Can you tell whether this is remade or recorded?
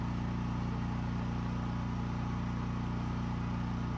recorded